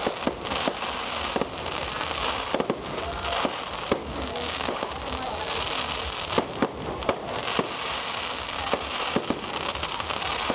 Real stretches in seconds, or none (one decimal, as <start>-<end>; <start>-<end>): 0.0-4.0; 4.9-10.5